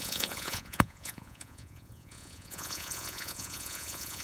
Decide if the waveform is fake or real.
fake